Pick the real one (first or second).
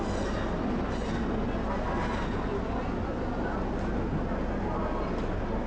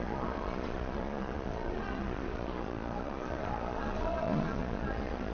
first